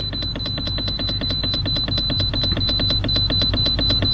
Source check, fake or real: real